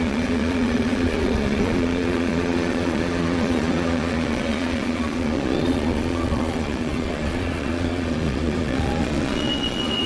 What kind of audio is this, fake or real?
fake